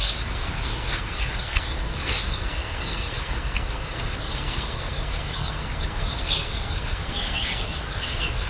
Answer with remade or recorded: remade